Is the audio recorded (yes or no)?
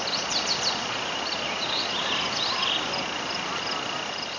yes